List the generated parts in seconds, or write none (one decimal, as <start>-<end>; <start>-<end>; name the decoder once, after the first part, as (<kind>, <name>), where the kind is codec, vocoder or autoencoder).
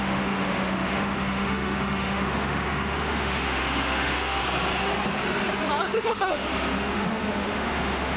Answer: 0.0-4.4 (autoencoder, DAC-VAE); 6.0-8.2